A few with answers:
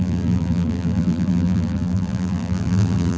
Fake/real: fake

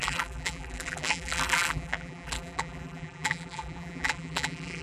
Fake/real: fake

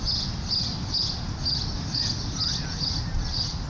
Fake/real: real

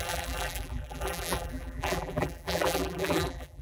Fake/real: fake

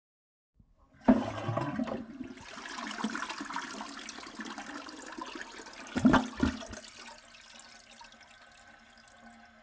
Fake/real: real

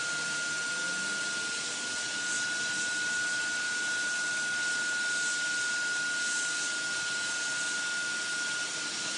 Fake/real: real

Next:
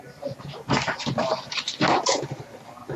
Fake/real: real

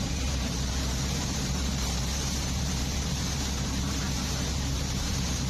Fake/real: fake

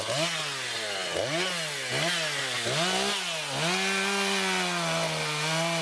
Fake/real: real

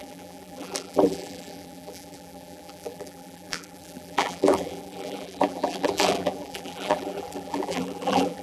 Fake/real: fake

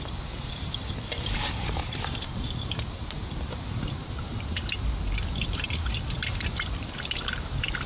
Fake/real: fake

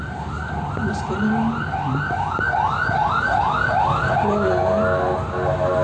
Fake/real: real